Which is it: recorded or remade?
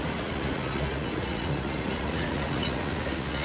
remade